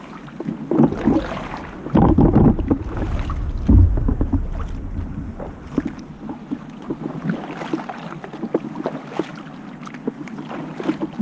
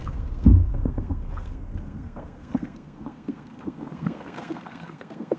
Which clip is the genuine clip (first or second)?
first